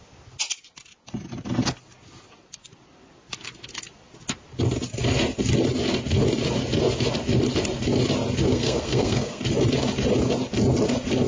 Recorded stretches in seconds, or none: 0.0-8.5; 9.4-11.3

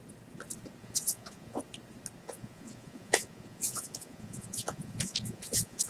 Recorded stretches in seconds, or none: 0.0-0.8; 1.6-2.2

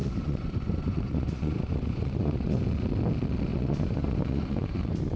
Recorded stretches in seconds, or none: 2.6-3.5; 4.8-5.2

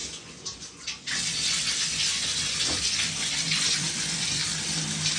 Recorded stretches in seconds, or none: 4.4-5.2

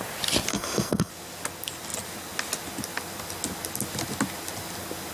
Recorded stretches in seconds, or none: 0.0-0.5; 1.1-5.1

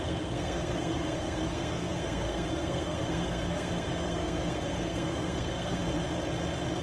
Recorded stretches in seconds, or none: 5.8-6.8

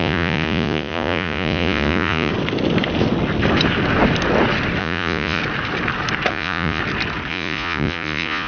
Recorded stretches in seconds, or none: 2.3-4.8; 5.4-6.3; 6.8-7.3